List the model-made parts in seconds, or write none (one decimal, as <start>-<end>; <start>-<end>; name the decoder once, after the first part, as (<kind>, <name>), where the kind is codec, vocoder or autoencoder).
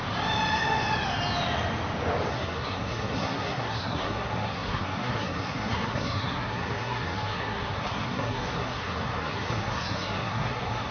2.3-10.9 (codec, SNAC)